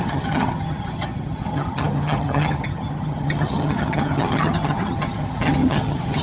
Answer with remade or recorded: remade